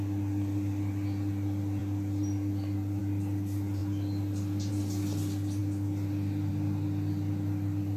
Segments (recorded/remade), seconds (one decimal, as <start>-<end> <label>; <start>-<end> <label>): 0.0-8.0 recorded